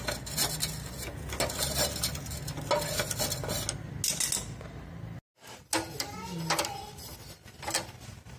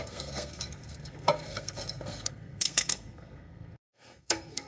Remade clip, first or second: second